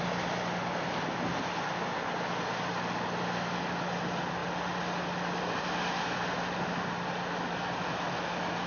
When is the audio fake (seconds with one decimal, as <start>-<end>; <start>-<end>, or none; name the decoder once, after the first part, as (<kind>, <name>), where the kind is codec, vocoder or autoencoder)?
none